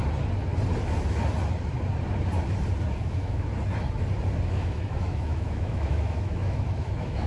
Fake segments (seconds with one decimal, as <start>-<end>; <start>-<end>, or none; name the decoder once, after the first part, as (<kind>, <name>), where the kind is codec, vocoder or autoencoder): 3.1-3.5 (autoencoder, DAC-VAE); 4.5-7.3